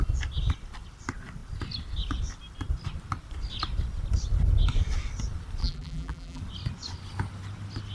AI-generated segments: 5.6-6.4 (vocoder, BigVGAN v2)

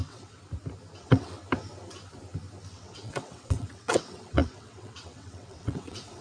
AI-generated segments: 0.0-0.4 (vocoder, WaveNeXt); 1.0-1.4; 2.7-6.2

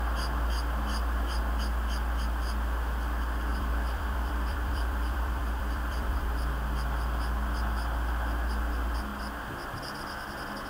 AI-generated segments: 3.5-6.2 (vocoder, BigVGAN v2)

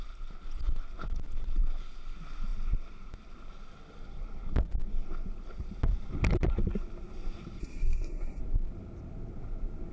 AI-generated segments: 7.6-8.4 (codec, SNAC)

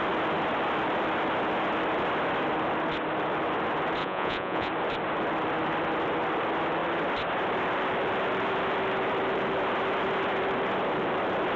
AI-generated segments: 4.0-4.7 (vocoder, Vocos)

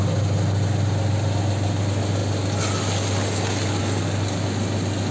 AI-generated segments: none